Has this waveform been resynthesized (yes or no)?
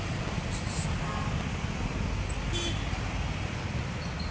no